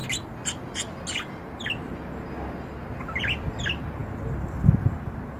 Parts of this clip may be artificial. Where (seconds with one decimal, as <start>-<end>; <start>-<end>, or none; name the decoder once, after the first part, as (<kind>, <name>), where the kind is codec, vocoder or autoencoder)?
none